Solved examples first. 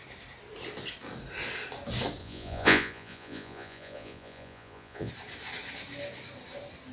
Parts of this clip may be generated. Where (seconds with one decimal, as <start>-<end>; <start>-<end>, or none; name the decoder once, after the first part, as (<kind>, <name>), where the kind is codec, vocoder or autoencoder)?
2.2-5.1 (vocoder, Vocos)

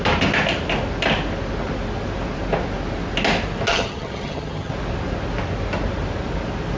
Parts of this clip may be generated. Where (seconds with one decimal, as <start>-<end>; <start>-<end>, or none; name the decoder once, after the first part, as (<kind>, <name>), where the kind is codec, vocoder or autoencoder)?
3.7-4.7 (vocoder, HiFi-GAN)

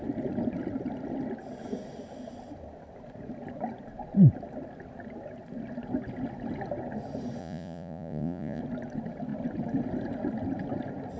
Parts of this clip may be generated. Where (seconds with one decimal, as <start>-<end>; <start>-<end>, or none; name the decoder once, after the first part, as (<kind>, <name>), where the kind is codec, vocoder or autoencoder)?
7.4-8.6 (vocoder, Vocos)

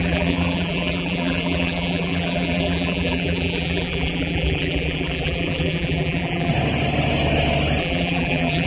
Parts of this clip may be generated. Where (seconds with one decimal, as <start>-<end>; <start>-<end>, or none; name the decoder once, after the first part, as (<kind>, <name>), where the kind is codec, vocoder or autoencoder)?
0.0-6.5 (vocoder, BigVGAN v2); 7.8-8.7